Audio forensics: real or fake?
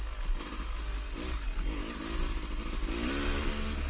real